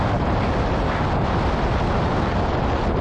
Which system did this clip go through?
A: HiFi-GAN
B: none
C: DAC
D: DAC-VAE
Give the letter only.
B